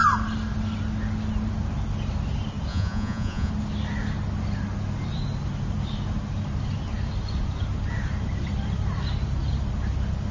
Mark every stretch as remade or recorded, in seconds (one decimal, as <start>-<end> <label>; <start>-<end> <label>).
0.0-2.7 recorded; 2.7-3.5 remade; 3.5-10.3 recorded